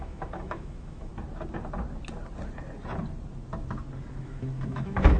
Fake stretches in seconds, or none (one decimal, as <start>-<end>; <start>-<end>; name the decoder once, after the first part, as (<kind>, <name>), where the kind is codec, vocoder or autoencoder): 0.0-1.1 (autoencoder, DAC-VAE); 4.2-5.2